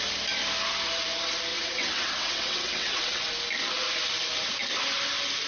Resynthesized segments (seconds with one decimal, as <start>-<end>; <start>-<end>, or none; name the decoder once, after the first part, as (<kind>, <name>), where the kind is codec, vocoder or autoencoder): 1.5-3.3 (vocoder, WaveNeXt)

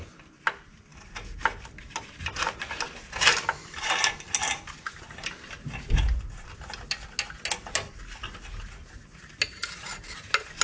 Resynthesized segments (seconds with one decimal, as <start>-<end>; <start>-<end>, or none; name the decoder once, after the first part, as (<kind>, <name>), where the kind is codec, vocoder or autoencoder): none

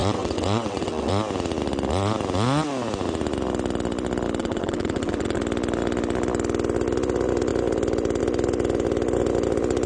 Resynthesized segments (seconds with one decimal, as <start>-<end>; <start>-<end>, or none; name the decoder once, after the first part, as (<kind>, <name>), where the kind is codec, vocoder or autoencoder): 0.0-1.1 (vocoder, WaveNeXt); 4.4-5.4

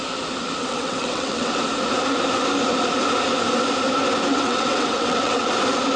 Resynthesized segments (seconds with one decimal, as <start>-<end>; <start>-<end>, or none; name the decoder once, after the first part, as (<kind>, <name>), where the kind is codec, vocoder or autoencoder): 0.6-1.6 (vocoder, WaveNeXt); 4.3-5.5

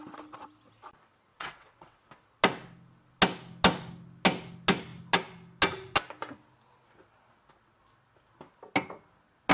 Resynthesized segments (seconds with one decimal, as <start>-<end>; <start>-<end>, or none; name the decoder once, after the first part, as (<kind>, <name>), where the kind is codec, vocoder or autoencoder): 1.3-2.0 (vocoder, WaveNeXt)

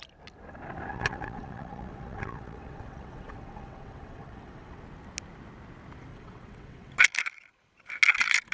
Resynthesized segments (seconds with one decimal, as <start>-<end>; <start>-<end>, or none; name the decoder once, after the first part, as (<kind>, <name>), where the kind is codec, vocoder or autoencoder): 0.9-4.8 (vocoder, WaveNeXt); 6.1-6.9

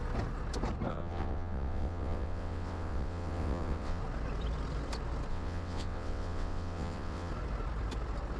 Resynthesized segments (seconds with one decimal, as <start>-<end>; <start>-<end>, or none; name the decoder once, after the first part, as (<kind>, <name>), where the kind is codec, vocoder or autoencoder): 0.9-4.0 (vocoder, WaveNeXt); 5.3-7.3